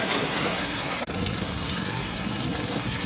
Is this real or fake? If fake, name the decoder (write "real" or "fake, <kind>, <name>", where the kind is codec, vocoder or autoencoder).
fake, codec, SNAC